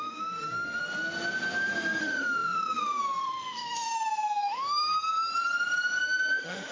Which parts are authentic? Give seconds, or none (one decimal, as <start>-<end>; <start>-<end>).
0.8-2.0; 4.9-6.0